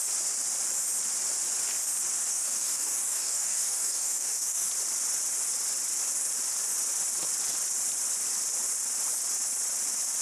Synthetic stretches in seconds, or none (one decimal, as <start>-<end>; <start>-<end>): 2.3-4.7